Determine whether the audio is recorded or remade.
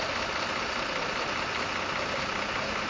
recorded